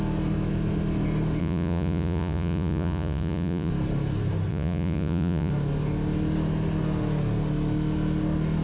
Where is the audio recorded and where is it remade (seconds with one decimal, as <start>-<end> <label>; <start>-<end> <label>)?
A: 0.0-1.4 recorded; 1.4-3.7 remade; 3.7-4.5 recorded; 4.5-5.5 remade; 5.5-8.6 recorded